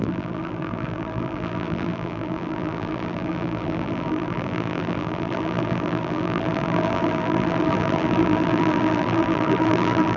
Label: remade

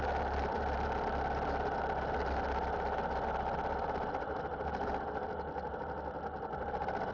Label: recorded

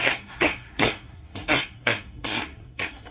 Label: remade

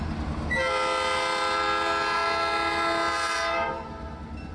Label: recorded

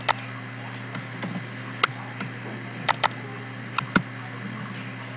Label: recorded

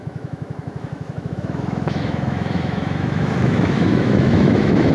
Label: remade